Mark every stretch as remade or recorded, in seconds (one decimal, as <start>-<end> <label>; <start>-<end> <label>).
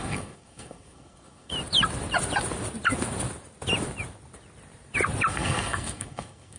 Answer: 0.0-1.5 remade; 1.5-5.3 recorded; 5.3-6.6 remade